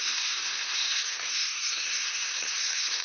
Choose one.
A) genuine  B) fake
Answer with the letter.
B